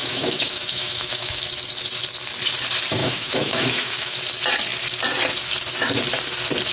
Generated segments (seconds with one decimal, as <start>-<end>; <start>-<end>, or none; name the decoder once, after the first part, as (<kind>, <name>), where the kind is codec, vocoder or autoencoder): 0.0-1.4 (autoencoder, DAC-VAE); 3.0-4.2